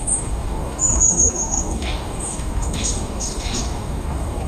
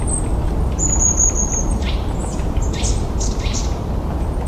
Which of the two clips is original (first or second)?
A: second